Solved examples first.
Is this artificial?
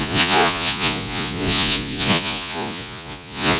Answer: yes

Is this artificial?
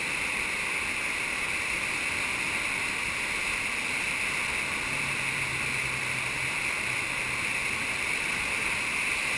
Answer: no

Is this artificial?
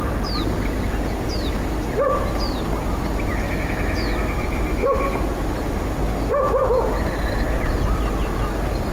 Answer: no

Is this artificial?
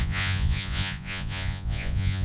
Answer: yes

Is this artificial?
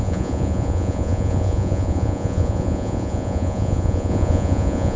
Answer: yes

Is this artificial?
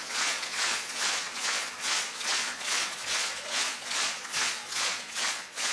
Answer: yes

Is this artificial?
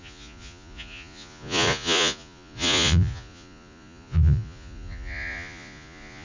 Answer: yes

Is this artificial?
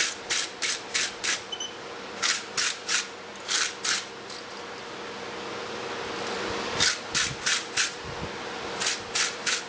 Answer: no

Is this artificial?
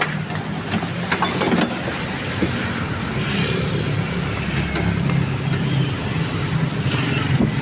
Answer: no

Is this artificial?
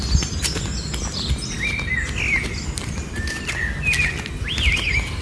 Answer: no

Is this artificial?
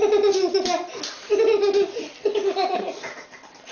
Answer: no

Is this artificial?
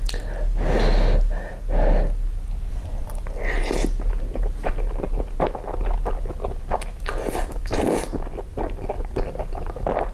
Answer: no